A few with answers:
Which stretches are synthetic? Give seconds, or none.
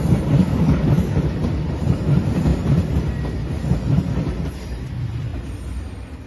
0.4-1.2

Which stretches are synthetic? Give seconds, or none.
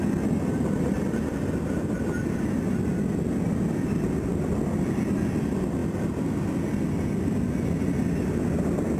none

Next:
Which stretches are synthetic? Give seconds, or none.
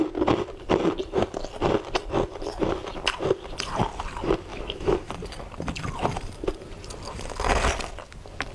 4.5-5.1